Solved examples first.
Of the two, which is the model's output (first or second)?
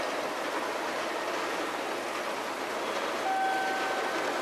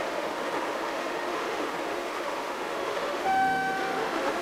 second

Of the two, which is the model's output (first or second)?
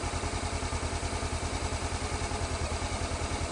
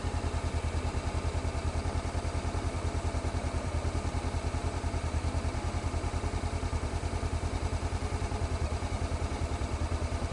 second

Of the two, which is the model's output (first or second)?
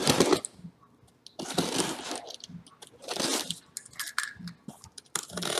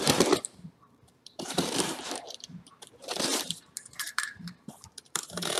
second